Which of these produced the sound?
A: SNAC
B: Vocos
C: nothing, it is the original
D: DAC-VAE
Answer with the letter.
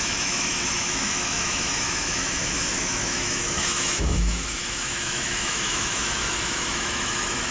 D